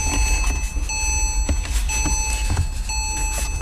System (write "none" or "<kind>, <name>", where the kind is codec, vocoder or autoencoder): none